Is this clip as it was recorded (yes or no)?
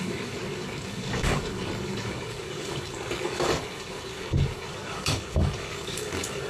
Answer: no